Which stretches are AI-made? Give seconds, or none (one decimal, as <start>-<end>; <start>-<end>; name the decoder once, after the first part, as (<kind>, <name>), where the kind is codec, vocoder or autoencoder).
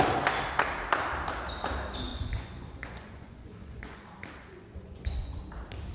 2.1-4.0 (vocoder, Vocos); 4.5-5.4